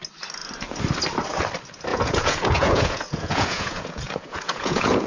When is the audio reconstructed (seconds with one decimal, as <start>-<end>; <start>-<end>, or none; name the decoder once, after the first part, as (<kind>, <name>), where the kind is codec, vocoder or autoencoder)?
1.9-5.1 (vocoder, Vocos)